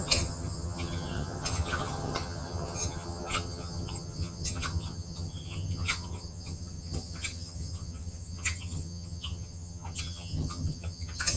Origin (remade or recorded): remade